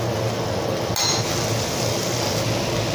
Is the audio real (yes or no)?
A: yes